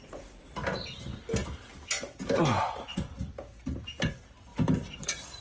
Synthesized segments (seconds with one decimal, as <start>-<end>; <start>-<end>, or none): 0.0-1.4; 3.7-5.4